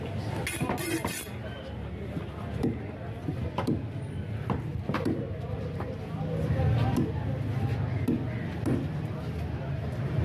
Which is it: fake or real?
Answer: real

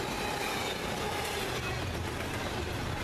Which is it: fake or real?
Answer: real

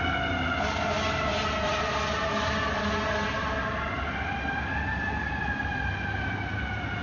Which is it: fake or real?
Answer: real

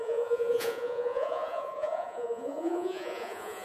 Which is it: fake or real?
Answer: fake